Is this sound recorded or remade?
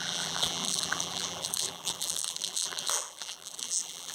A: remade